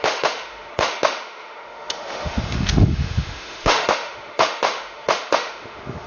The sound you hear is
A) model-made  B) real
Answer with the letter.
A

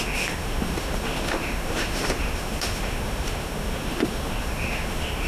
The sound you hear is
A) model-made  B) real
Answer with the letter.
A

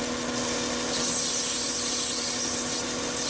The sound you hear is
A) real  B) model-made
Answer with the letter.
A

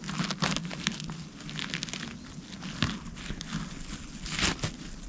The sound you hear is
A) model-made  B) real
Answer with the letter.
B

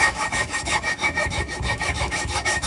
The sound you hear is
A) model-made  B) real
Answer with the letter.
A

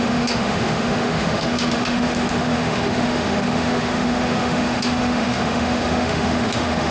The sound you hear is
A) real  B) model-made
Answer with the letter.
B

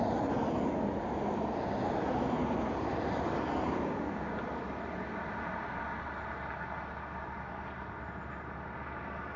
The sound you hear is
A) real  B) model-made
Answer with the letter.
A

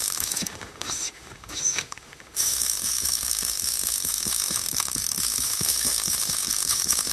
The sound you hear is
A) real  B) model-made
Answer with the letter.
B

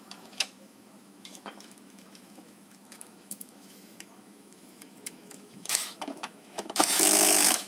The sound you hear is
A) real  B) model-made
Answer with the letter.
B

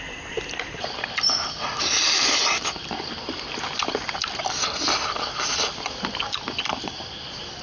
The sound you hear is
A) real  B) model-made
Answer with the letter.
A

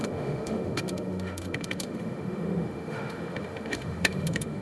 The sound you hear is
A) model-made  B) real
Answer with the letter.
A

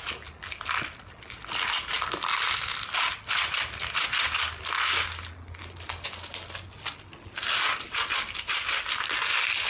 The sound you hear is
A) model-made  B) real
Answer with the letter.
B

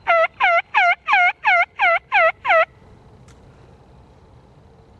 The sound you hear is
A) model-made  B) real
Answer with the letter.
B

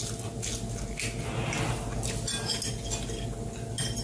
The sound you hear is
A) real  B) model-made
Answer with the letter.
A